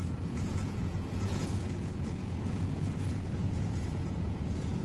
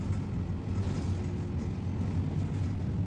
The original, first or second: second